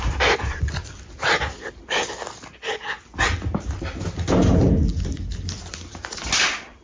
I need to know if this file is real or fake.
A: real